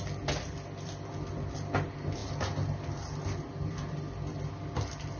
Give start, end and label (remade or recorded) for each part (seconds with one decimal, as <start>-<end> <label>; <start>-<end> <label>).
0.0-5.2 recorded